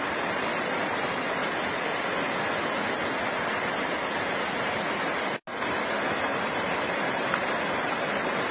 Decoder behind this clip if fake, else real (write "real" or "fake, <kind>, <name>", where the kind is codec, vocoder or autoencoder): real